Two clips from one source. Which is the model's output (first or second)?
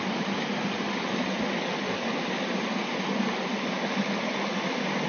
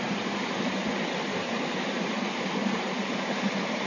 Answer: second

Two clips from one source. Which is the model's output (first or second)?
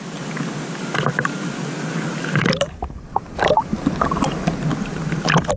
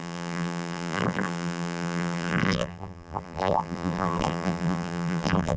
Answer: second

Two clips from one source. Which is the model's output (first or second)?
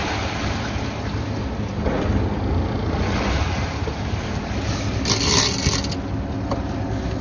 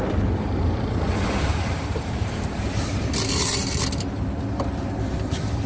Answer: second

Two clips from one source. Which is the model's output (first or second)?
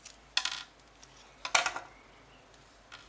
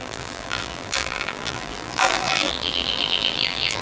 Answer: second